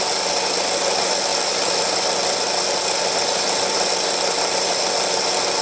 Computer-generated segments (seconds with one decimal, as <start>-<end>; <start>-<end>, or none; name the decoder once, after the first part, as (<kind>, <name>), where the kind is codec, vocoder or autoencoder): none